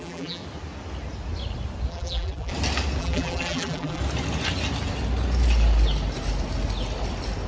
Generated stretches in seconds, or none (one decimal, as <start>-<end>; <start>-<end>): 0.0-0.4; 1.9-2.5; 3.0-4.0